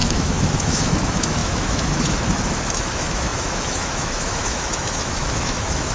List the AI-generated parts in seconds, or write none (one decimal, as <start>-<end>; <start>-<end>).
0.0-5.9